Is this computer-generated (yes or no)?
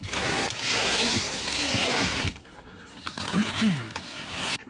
yes